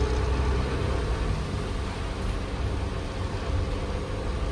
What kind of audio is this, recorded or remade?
recorded